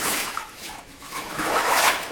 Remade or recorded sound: remade